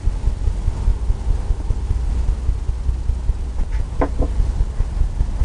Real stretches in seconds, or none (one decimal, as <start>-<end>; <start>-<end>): 0.0-5.4